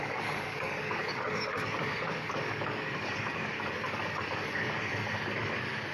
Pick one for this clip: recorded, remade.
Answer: remade